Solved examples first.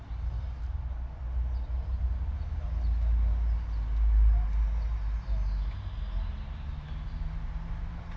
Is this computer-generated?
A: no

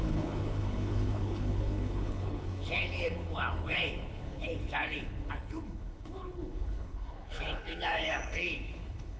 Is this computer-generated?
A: yes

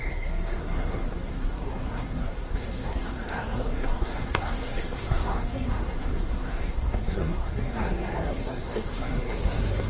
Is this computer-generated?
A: yes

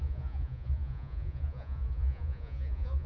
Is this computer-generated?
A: yes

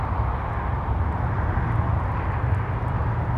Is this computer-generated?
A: no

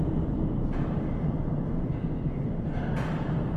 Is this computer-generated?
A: no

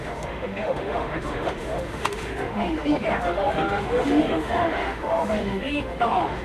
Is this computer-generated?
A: yes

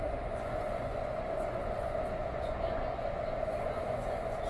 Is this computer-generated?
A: yes